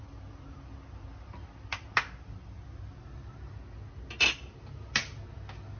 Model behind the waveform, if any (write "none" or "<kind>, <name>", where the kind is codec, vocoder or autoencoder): none